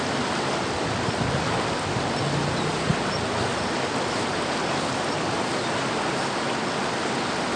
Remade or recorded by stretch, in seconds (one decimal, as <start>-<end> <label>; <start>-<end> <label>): 0.0-7.6 recorded